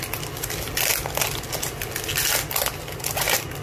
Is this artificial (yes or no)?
no